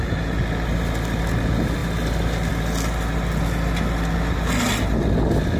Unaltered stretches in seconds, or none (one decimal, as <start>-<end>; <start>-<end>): 0.0-5.6